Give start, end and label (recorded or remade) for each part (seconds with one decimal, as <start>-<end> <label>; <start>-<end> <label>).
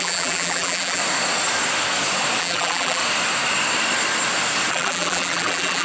0.0-1.0 remade; 1.0-2.4 recorded; 2.4-3.0 remade; 3.0-4.7 recorded; 4.7-5.8 remade